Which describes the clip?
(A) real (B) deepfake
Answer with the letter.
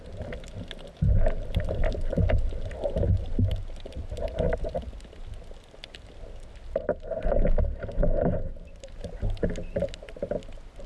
A